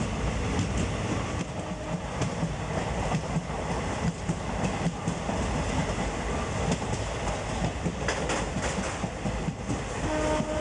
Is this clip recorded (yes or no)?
yes